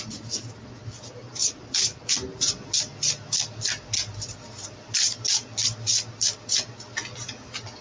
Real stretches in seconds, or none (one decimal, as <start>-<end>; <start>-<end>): 0.0-7.8